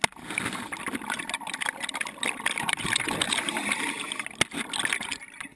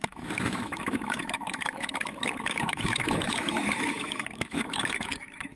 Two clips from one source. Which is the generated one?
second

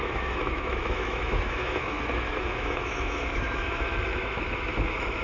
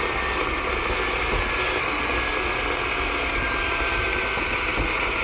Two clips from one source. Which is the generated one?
first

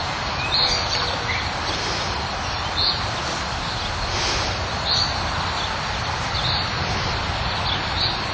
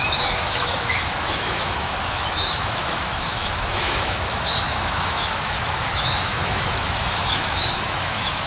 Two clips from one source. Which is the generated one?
second